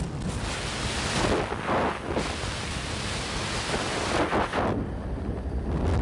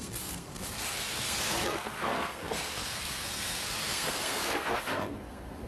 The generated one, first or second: second